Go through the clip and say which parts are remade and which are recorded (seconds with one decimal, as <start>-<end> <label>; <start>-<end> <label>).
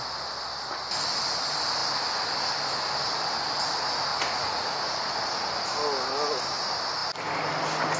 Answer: 0.0-4.1 recorded; 4.1-5.0 remade; 5.0-8.0 recorded